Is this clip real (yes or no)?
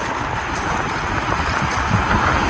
yes